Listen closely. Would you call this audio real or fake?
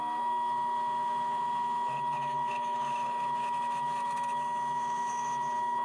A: fake